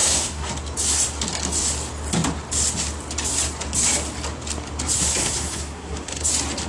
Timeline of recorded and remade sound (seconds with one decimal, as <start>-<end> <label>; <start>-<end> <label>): 0.0-0.5 remade; 0.5-5.2 recorded; 5.2-6.3 remade; 6.3-6.7 recorded